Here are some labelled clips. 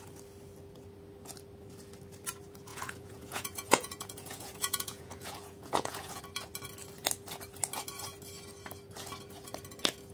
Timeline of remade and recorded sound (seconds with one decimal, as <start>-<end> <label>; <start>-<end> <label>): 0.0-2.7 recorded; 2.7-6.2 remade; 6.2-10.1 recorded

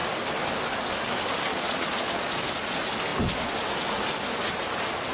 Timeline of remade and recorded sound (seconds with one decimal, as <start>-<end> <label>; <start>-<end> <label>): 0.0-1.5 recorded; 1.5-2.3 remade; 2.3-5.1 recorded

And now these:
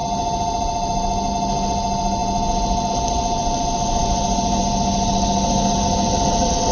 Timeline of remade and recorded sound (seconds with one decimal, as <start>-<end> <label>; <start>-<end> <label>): 0.0-6.7 recorded